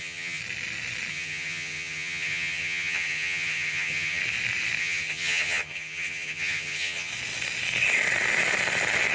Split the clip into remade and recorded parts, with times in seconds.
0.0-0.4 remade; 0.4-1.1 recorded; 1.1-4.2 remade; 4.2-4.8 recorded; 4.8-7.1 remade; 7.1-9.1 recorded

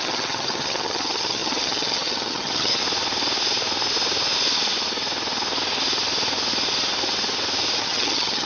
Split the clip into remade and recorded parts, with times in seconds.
0.0-2.8 remade; 2.8-7.8 recorded; 7.8-8.4 remade

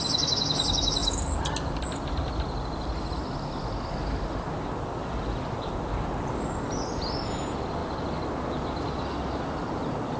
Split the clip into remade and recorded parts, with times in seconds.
0.0-10.2 recorded

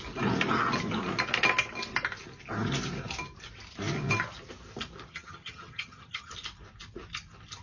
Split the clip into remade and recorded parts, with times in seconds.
0.0-5.1 recorded; 5.1-6.3 remade; 6.3-7.6 recorded

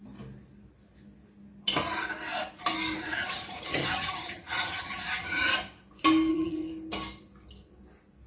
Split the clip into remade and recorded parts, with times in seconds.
0.0-3.0 recorded; 3.0-5.5 remade; 5.5-6.3 recorded; 6.3-6.7 remade; 6.7-8.3 recorded

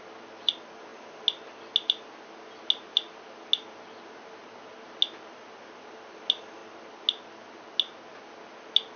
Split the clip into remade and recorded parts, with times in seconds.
0.0-9.0 recorded